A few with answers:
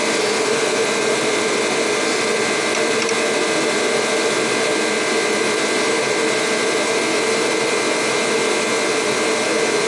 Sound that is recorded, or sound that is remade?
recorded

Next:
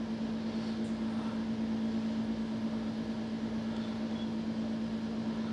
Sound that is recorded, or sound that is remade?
recorded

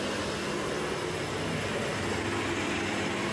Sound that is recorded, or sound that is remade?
recorded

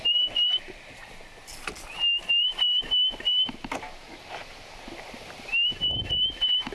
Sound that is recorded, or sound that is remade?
remade